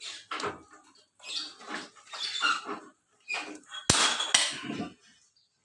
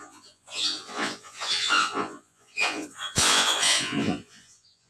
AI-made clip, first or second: second